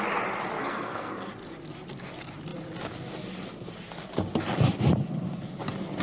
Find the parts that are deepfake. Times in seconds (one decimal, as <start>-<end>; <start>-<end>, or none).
0.6-1.3